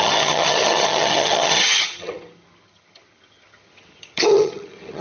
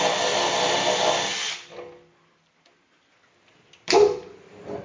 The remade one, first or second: first